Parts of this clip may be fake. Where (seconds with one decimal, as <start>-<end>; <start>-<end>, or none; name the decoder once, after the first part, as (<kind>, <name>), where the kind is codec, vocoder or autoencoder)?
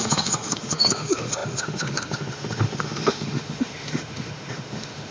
0.0-5.1 (autoencoder, DAC-VAE)